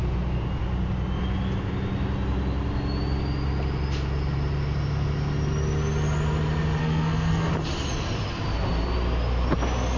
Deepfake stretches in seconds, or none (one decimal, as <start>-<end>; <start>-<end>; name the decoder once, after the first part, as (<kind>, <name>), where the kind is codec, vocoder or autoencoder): 6.8-7.5 (codec, SNAC)